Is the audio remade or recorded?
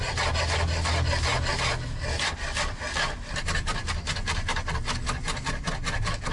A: recorded